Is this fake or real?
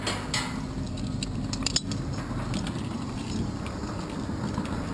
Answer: real